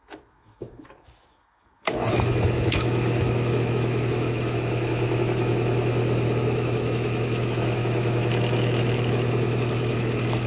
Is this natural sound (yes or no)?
no